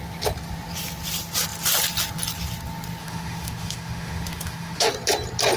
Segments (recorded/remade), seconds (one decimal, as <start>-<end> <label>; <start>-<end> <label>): 0.0-3.0 recorded; 3.0-4.9 remade; 4.9-5.6 recorded